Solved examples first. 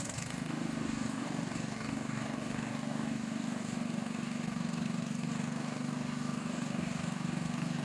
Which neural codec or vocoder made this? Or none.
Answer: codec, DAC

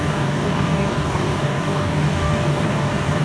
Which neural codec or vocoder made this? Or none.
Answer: codec, DAC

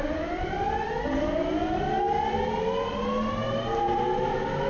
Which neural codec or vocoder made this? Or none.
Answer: none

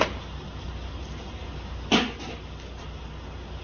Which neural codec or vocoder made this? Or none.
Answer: none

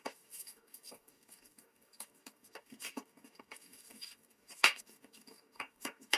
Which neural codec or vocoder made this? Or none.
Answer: codec, DAC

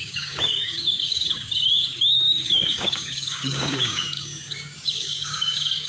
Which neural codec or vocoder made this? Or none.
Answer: codec, DAC